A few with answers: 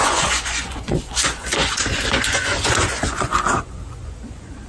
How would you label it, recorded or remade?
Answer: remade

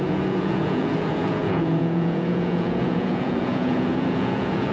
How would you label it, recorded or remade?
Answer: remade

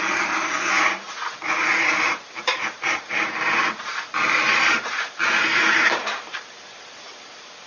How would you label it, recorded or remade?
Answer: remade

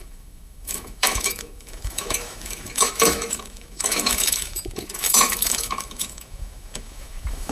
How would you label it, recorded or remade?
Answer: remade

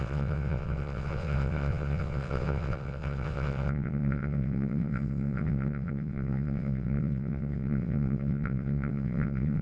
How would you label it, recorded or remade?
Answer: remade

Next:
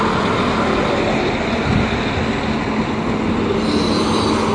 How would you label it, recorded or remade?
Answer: recorded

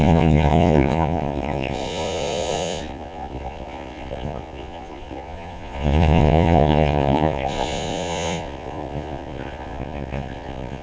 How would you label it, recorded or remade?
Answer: remade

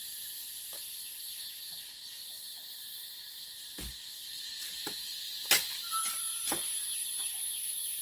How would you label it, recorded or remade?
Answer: recorded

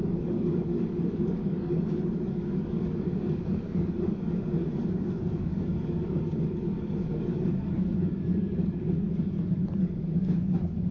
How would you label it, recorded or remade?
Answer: remade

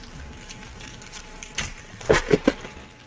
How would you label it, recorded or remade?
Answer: recorded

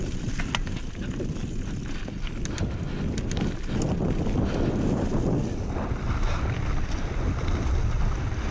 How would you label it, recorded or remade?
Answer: recorded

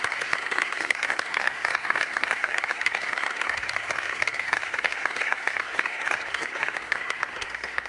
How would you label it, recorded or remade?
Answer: remade